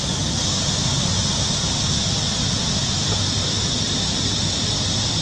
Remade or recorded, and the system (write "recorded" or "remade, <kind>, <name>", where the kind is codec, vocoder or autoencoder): recorded